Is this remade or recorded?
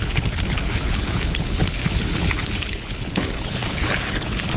remade